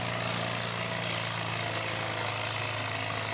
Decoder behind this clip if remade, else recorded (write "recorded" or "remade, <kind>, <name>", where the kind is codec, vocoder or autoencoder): recorded